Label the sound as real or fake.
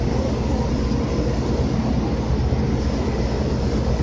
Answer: real